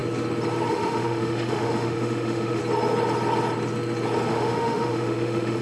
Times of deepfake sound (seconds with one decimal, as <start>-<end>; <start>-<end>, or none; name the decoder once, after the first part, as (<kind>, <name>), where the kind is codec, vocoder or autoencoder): 0.7-2.6 (autoencoder, DAC-VAE); 4.3-5.6